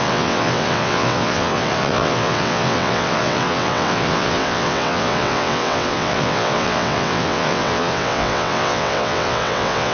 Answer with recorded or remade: remade